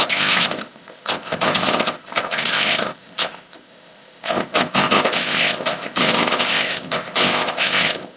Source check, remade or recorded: remade